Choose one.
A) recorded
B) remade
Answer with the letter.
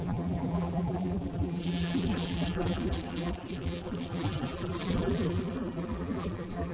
B